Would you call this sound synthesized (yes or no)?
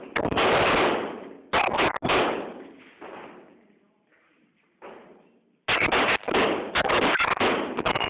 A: no